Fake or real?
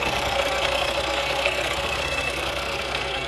fake